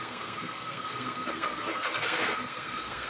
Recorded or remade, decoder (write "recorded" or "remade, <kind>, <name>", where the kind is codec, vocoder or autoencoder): remade, codec, SNAC